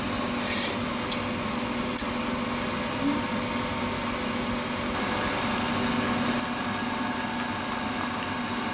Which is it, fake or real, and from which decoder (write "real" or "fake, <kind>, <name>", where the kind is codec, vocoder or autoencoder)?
real